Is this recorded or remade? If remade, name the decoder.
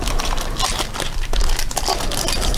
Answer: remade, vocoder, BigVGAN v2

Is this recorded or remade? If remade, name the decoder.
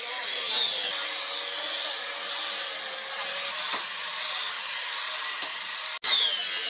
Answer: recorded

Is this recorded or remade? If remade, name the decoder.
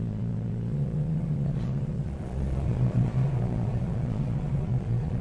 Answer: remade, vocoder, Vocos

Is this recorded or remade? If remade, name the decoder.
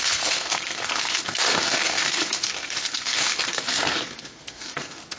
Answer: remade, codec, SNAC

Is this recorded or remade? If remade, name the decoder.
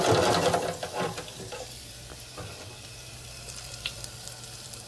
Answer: remade, vocoder, BigVGAN v2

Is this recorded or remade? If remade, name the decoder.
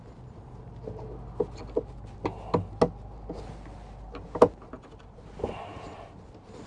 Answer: recorded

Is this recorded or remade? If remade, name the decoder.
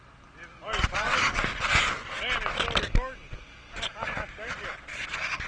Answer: recorded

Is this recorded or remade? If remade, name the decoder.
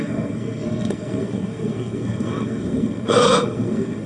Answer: remade, codec, SNAC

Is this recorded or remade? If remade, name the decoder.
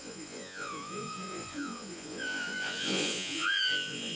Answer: remade, vocoder, Vocos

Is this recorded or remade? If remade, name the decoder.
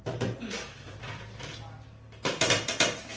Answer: recorded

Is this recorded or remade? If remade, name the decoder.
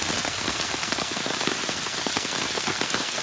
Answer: remade, codec, SNAC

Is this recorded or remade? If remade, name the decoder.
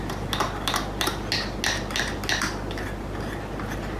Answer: recorded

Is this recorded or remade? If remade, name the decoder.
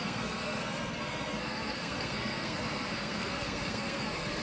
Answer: remade, codec, SNAC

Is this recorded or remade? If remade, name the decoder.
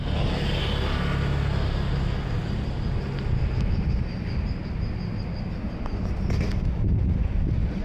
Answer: recorded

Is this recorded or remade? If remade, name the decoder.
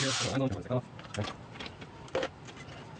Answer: recorded